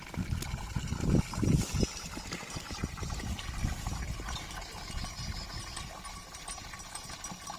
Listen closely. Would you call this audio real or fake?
real